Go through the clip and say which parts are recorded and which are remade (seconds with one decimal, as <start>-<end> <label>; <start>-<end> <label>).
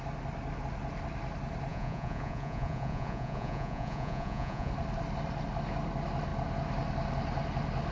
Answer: 0.0-1.7 recorded; 1.7-4.7 remade; 4.7-7.9 recorded